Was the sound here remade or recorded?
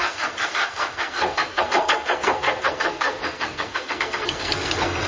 remade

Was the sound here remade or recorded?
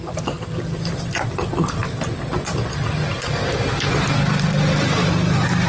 recorded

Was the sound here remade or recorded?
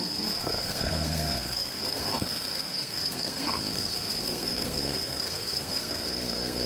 remade